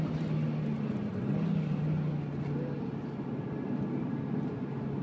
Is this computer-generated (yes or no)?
no